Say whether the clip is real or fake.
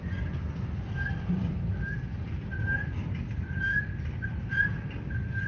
real